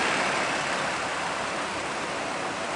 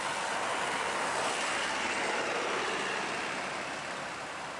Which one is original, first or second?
second